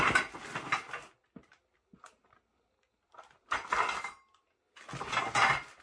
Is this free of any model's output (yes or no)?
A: yes